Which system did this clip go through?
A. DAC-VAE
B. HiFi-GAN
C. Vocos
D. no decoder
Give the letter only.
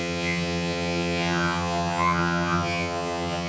B